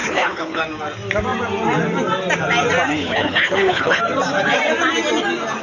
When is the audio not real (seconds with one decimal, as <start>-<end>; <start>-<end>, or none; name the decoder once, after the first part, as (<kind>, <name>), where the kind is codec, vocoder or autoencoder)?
0.0-0.6 (codec, HILCodec); 2.9-4.0